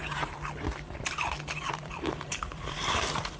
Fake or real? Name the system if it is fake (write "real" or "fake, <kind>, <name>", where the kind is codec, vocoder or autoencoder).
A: fake, vocoder, BigVGAN v2